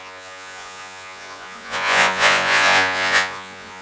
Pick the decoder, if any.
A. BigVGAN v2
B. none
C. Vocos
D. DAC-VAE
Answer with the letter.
C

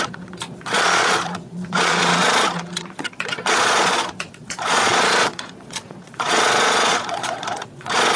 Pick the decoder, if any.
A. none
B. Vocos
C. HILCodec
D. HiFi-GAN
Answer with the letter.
B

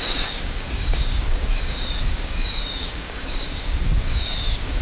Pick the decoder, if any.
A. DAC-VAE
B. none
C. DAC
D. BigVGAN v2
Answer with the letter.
C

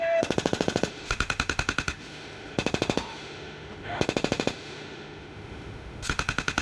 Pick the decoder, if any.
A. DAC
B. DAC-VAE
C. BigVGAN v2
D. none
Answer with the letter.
B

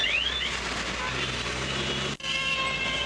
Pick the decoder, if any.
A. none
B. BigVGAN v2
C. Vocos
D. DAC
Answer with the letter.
A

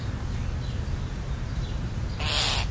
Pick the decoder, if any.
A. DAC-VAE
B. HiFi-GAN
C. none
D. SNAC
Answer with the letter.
C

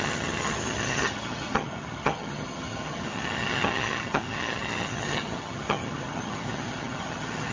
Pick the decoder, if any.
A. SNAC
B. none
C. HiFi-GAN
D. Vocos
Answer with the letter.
C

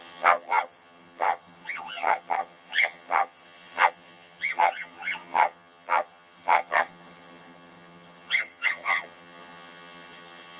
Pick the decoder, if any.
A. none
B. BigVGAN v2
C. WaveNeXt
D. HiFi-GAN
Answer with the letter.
D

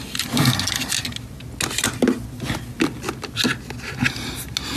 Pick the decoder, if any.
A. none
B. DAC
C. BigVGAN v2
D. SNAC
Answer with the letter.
A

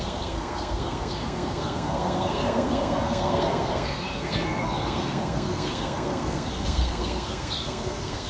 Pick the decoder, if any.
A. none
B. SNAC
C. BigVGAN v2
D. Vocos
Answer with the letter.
B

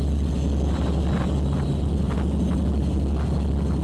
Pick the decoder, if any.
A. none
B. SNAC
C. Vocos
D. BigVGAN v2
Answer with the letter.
A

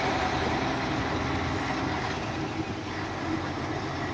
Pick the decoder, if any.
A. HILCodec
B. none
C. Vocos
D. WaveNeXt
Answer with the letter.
B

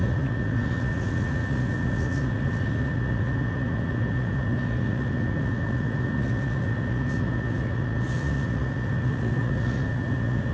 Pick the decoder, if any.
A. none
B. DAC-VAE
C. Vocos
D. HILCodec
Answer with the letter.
C